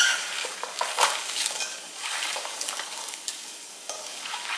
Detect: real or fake fake